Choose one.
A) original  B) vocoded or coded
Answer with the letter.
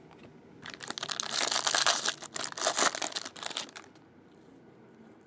A